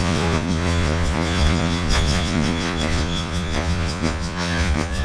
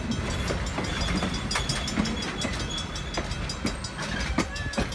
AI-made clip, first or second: first